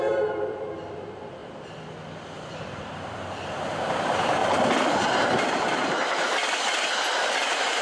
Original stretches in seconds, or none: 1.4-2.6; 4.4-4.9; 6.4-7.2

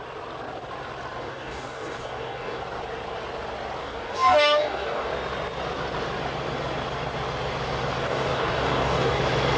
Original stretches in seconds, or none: 0.0-1.2; 2.6-3.8; 5.1-8.0; 9.2-9.6

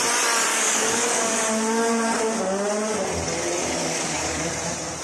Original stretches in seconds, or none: 0.0-0.5; 1.4-3.8; 4.5-5.0

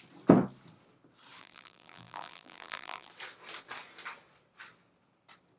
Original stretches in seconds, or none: 0.0-1.4; 3.1-5.6